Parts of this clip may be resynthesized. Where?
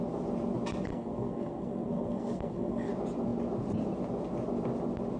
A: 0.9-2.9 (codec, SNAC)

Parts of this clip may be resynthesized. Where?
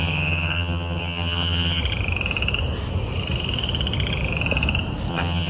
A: 0.0-1.8 (vocoder, HiFi-GAN); 5.1-5.5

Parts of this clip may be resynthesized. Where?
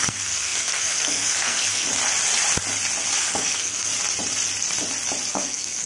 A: 0.0-1.9 (codec, SNAC); 3.2-3.9; 5.3-5.9